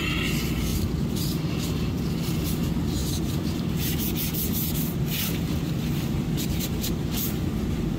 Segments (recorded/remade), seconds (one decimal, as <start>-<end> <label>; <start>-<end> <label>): 0.0-0.7 recorded; 0.7-2.0 remade; 2.0-3.0 recorded; 3.0-6.9 remade; 6.9-8.0 recorded